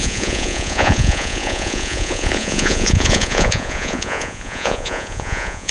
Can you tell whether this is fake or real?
fake